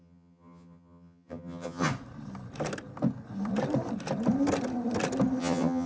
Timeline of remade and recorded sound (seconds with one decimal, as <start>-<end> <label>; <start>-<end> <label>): 0.0-1.9 remade; 1.9-5.4 recorded; 5.4-5.9 remade